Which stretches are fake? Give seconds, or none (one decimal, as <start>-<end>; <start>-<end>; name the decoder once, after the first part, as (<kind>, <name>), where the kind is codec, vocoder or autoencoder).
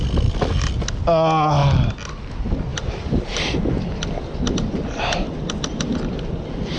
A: none